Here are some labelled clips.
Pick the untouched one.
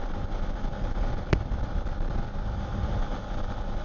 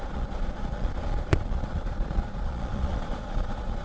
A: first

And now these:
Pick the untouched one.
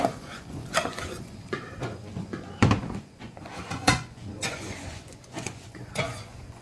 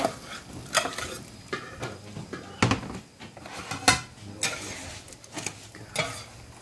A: second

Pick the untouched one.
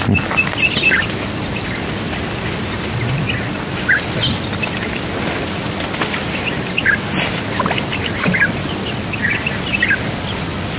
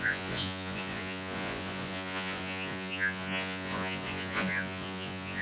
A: first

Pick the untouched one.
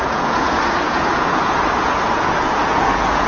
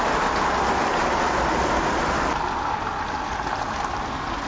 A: second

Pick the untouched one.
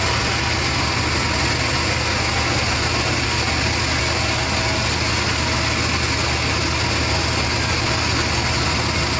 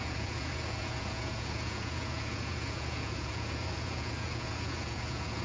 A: first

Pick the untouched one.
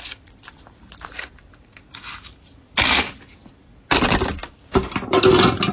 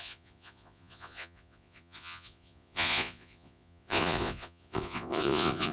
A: first